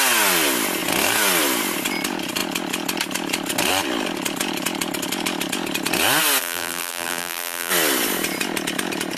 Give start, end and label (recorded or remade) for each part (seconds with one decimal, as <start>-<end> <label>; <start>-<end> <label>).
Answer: 0.0-6.4 recorded; 6.4-7.7 remade; 7.7-9.2 recorded